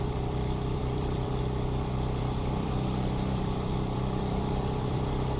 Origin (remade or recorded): remade